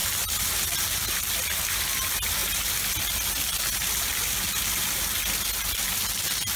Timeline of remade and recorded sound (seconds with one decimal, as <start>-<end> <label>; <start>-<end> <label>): 0.0-6.6 recorded